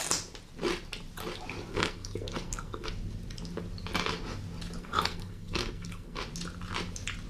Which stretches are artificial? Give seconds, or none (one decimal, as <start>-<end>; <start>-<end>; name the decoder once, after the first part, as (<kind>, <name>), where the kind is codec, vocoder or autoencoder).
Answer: 1.7-2.9 (codec, SNAC); 4.8-6.2